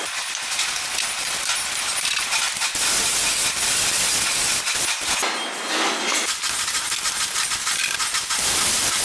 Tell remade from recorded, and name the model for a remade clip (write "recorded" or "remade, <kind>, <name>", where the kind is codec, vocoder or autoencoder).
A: recorded